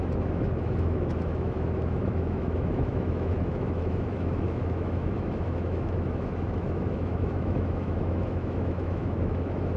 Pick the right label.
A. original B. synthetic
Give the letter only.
B